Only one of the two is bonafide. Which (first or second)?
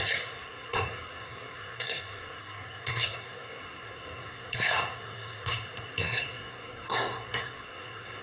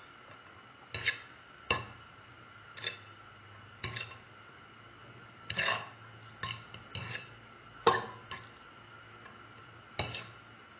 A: second